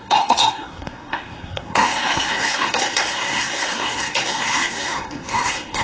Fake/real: fake